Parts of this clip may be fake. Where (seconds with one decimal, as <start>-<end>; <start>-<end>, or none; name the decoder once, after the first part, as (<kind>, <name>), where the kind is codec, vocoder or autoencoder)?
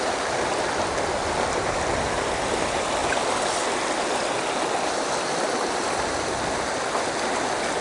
none